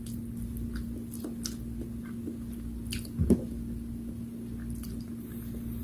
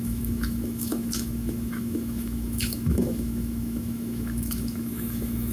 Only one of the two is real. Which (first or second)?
first